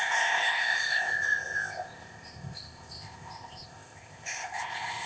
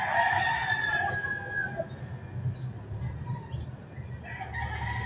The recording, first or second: second